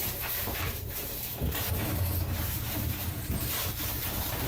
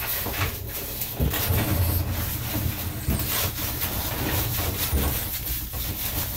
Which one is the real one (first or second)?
second